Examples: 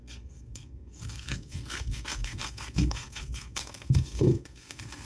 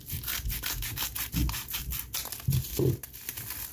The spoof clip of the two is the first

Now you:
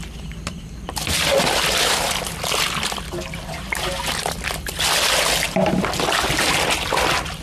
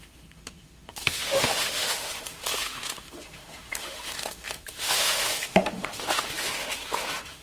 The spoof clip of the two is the second